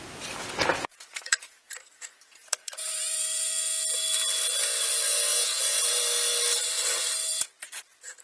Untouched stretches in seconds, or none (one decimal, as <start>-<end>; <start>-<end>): 0.0-0.7; 3.5-5.3; 6.0-7.3